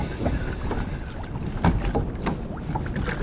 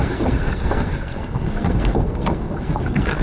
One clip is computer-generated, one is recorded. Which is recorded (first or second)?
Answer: first